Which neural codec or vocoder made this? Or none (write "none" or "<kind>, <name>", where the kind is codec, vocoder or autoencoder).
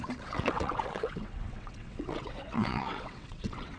vocoder, WaveNeXt